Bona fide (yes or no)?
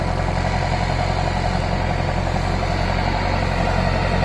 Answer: yes